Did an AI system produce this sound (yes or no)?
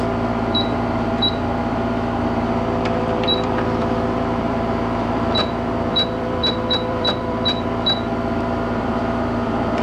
yes